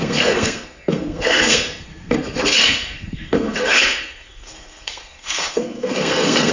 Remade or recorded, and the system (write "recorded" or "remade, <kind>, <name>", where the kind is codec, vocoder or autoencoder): remade, codec, SNAC